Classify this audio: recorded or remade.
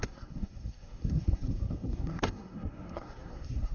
remade